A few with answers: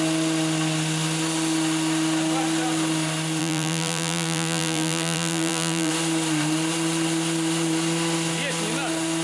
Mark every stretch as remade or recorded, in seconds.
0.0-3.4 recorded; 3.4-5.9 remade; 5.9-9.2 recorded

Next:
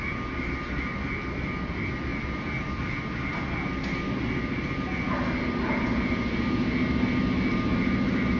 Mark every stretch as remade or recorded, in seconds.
0.0-2.1 recorded; 2.1-2.9 remade; 2.9-8.4 recorded

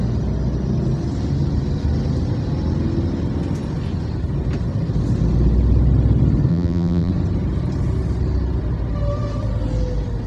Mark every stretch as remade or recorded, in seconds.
0.0-6.5 recorded; 6.5-7.1 remade; 7.1-10.3 recorded

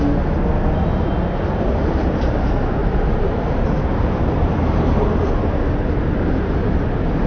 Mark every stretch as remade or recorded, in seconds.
0.0-2.8 recorded; 2.8-5.1 remade; 5.1-7.3 recorded